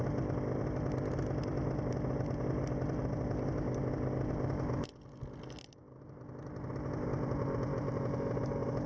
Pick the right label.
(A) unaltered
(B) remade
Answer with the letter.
A